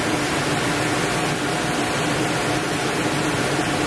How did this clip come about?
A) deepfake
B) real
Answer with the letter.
B